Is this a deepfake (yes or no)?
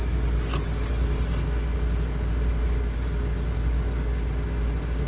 no